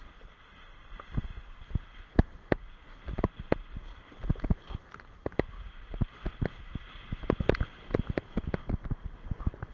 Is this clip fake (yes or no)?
no